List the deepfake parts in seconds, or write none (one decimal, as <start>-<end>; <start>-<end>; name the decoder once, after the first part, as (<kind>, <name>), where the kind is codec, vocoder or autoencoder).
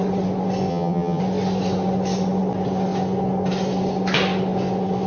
0.7-1.2 (vocoder, HiFi-GAN)